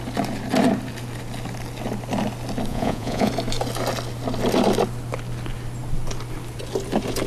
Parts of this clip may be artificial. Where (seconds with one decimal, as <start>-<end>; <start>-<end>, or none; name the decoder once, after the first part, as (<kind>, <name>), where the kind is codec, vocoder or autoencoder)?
2.7-3.3 (vocoder, Vocos)